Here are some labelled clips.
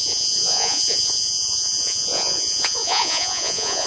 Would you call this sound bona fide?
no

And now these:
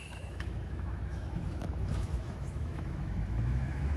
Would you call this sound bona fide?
no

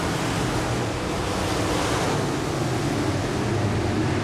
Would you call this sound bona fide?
yes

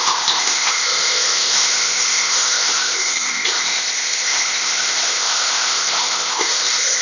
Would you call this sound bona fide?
no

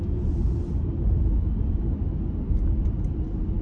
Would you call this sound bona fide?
yes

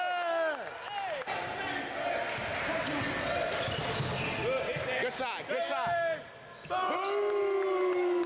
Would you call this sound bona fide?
yes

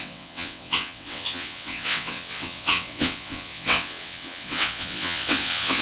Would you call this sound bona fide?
no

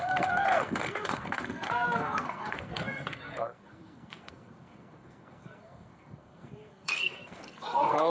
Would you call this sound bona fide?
no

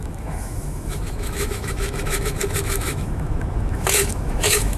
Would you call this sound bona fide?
no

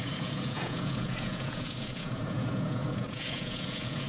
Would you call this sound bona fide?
no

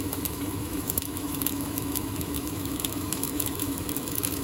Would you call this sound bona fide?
no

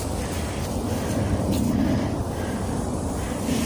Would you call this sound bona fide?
no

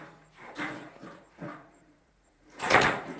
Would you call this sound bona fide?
no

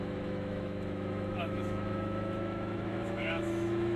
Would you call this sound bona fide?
no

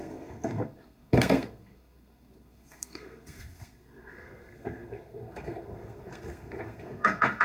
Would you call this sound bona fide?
no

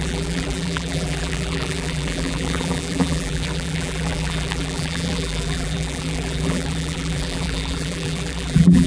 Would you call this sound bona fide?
no